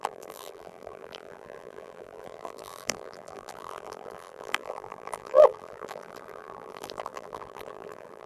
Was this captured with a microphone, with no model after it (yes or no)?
no